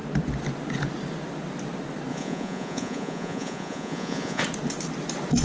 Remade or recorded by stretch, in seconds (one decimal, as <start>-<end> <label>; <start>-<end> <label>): 0.0-2.1 recorded; 2.1-4.4 remade; 4.4-5.4 recorded